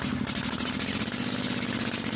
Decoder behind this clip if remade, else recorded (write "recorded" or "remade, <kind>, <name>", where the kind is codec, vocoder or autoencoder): recorded